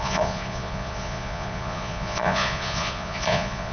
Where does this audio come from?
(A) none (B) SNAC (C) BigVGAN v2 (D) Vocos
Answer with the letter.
D